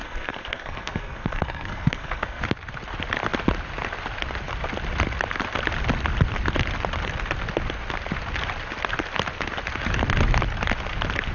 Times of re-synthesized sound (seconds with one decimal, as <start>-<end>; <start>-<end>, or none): 0.0-2.4

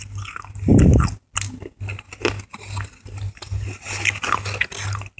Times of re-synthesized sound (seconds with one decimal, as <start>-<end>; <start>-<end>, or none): none

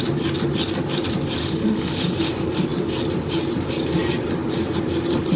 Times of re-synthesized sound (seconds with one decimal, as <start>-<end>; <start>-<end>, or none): 1.4-2.3

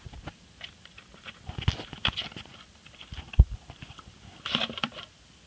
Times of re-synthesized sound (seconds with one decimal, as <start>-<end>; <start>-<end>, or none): 0.0-1.1; 1.8-5.5

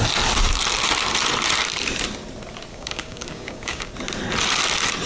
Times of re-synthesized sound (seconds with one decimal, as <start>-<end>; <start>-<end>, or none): 2.7-3.9